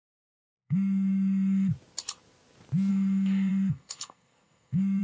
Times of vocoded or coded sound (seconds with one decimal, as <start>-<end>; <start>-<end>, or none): 0.0-1.7; 2.9-5.0